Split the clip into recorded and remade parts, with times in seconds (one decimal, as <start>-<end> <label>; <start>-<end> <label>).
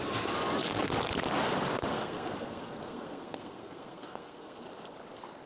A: 0.0-1.9 recorded; 1.9-4.6 remade; 4.6-5.5 recorded